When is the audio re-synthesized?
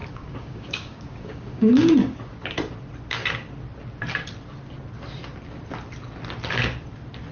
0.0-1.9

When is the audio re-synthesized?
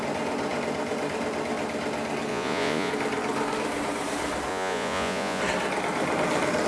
2.3-2.9; 4.5-5.4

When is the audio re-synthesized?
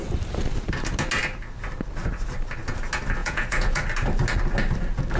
3.2-3.8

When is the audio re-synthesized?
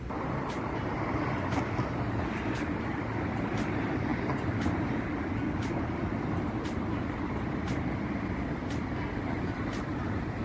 none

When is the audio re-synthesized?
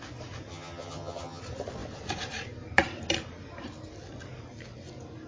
0.5-1.4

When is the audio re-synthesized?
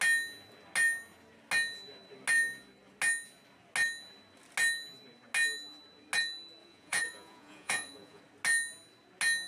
6.6-8.2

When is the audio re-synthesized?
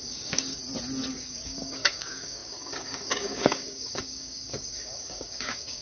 0.0-0.6; 1.1-5.8